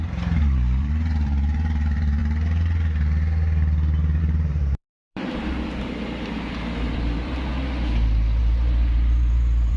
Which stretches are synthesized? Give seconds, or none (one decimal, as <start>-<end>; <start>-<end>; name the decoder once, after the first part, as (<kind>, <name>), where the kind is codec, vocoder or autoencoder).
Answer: 0.0-2.2 (vocoder, BigVGAN v2); 4.2-7.5; 8.4-9.8

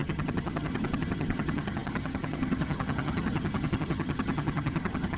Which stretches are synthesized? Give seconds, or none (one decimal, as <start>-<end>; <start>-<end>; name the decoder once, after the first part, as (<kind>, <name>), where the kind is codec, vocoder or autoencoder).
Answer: 0.0-5.2 (vocoder, HiFi-GAN)

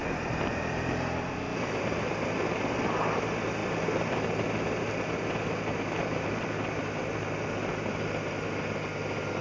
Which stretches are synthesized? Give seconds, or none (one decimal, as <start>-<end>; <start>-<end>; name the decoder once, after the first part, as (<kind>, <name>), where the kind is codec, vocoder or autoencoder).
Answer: 0.0-2.4 (vocoder, BigVGAN v2)

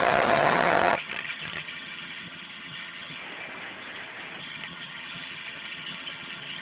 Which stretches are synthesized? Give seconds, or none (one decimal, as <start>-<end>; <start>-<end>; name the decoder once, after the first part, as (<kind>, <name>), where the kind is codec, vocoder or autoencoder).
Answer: 0.0-3.2 (vocoder, HiFi-GAN); 4.4-6.6

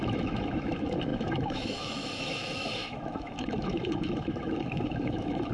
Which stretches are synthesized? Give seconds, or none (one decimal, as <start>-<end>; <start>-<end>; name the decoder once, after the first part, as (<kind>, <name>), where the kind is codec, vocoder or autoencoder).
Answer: 0.0-5.5 (autoencoder, DAC-VAE)

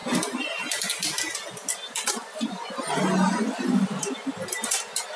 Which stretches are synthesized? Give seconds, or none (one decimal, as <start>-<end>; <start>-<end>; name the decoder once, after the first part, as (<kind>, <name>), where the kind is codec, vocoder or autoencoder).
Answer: none

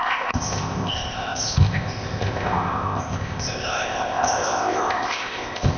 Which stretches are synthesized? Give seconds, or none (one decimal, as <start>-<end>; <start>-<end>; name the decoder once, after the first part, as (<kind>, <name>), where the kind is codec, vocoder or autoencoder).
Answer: 0.0-5.8 (codec, ZipCodec)